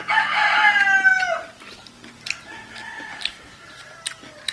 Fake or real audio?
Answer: real